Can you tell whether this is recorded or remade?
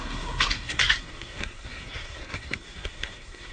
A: remade